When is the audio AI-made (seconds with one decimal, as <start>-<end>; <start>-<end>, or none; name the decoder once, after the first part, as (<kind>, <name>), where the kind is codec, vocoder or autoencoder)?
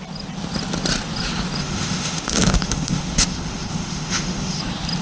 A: 1.6-4.6 (autoencoder, DAC-VAE)